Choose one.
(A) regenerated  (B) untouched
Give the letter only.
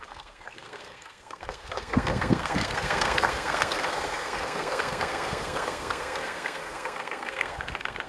A